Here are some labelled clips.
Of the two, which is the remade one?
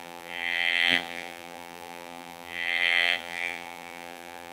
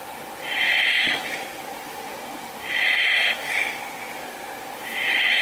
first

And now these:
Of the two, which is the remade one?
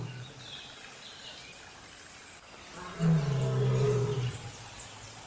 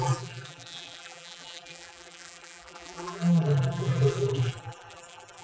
second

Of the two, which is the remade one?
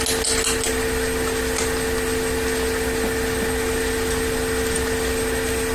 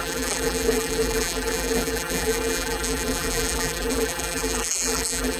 second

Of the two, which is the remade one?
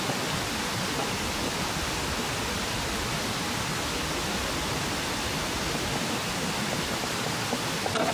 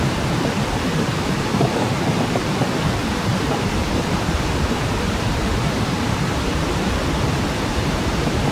second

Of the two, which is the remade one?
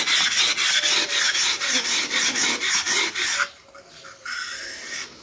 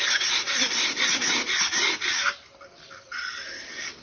second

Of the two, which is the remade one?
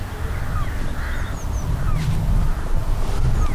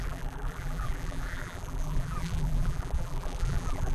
second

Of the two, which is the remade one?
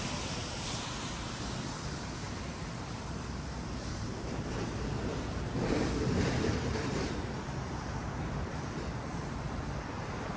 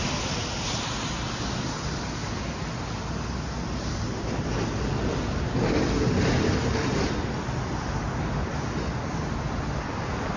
first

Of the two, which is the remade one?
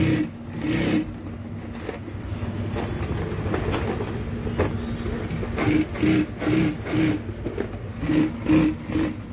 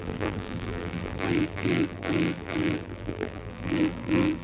second